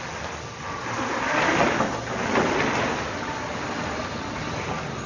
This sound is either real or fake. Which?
real